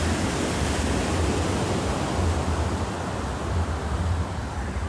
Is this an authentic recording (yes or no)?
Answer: yes